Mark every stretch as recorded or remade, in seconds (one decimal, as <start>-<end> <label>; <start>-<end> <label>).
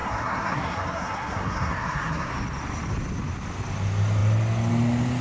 0.0-2.3 remade; 2.3-5.2 recorded